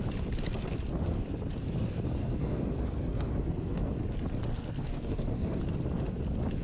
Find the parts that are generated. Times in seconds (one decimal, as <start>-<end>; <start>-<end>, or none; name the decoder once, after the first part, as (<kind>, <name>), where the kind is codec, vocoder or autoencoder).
2.2-3.9 (codec, SNAC); 4.5-5.6